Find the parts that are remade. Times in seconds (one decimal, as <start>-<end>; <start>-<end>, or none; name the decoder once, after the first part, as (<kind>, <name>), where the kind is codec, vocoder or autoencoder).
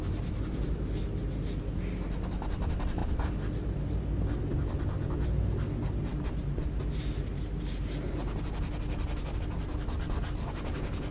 none